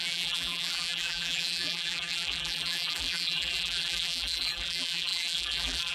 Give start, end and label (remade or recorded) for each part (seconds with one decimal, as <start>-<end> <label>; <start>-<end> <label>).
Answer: 0.0-5.9 remade